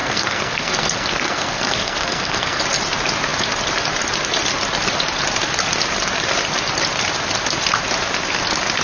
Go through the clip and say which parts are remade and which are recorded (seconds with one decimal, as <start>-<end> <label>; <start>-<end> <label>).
0.0-2.6 remade; 2.6-8.8 recorded